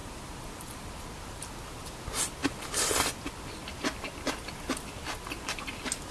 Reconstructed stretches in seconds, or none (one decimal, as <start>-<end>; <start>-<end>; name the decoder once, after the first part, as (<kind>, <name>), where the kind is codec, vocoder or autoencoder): 0.0-0.9 (vocoder, BigVGAN v2); 2.4-3.1

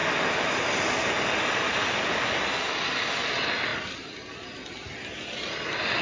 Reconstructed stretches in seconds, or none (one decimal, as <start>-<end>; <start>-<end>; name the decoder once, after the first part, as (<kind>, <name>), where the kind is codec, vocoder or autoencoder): none